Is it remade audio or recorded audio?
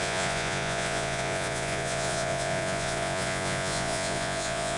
remade